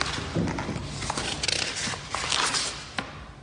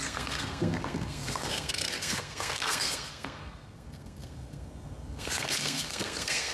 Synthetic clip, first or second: second